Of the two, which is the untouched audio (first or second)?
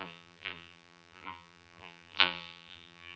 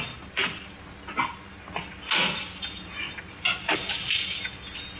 second